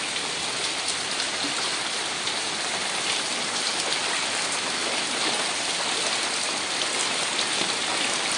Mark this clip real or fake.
real